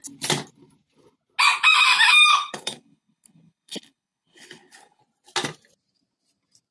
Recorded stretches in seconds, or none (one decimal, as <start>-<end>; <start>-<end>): 0.0-2.3; 5.0-6.7